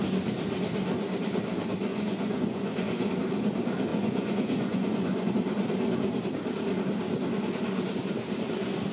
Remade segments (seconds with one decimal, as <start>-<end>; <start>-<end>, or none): 1.9-3.1; 3.9-5.3